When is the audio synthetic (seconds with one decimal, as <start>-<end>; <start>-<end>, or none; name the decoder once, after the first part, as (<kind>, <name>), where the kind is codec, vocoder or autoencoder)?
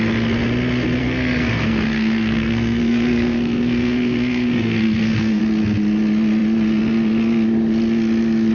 1.0-5.4 (codec, SNAC)